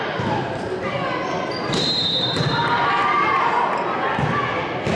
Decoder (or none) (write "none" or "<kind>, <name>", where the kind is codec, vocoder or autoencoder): none